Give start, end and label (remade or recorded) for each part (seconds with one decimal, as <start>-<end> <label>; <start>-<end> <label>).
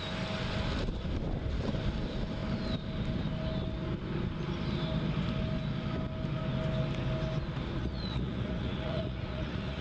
0.0-7.8 recorded; 7.8-9.8 remade